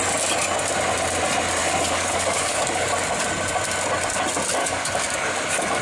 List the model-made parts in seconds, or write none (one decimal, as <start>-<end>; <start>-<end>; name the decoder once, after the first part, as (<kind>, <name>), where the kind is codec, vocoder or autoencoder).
1.6-2.9 (codec, DAC); 4.6-5.8